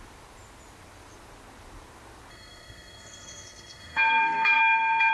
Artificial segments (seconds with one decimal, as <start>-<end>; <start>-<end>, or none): 2.3-5.1